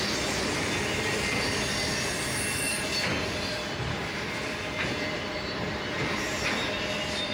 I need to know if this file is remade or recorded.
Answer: recorded